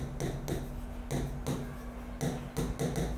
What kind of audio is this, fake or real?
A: real